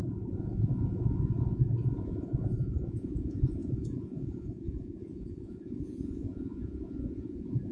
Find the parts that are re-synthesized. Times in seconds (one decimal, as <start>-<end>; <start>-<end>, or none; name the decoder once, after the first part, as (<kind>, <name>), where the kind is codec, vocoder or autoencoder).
0.0-7.7 (vocoder, Vocos)